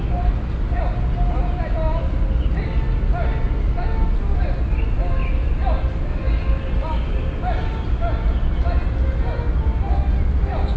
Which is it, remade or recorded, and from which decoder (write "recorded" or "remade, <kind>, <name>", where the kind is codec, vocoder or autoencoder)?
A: recorded